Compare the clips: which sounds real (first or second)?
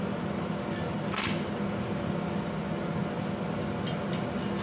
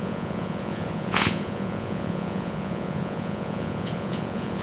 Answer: first